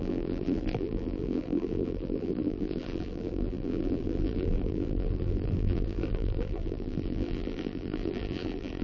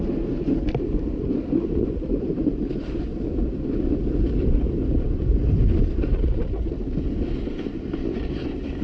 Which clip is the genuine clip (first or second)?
second